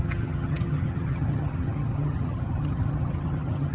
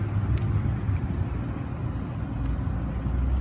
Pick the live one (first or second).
second